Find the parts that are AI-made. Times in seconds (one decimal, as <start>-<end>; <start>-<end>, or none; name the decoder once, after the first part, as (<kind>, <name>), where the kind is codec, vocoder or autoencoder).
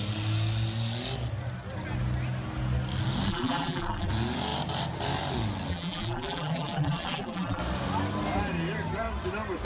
3.3-4.1 (vocoder, BigVGAN v2); 5.7-7.6